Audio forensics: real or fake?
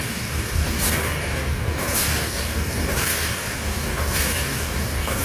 fake